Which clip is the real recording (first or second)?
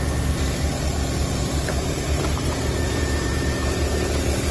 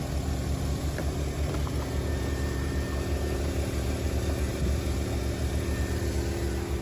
second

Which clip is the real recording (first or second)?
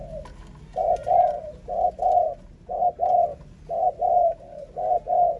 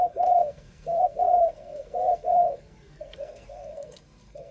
first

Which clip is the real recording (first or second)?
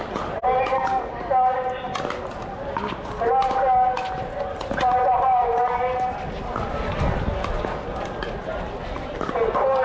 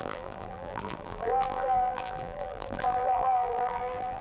first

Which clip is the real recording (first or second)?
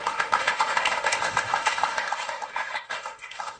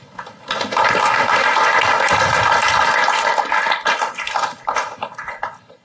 second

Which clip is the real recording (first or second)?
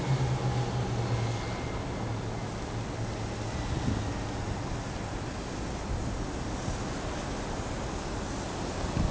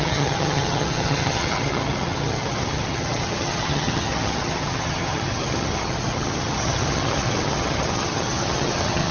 first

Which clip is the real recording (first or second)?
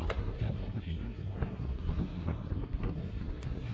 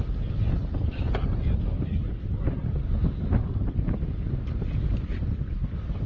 second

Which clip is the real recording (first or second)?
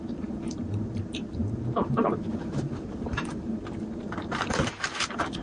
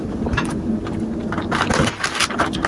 second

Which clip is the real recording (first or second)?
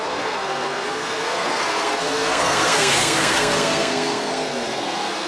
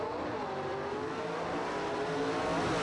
second